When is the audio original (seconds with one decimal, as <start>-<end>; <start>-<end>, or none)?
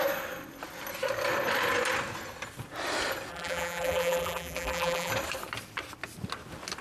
0.0-3.3; 5.1-6.8